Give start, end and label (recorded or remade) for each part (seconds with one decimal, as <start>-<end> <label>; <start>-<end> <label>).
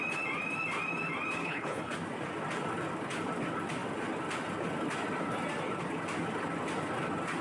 0.0-1.4 recorded; 1.4-1.9 remade; 1.9-7.4 recorded